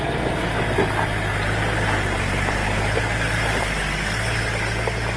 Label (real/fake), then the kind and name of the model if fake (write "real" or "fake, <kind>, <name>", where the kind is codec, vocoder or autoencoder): real